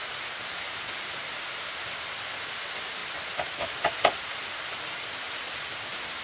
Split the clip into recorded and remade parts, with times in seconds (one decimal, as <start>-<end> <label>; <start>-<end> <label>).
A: 0.0-6.2 recorded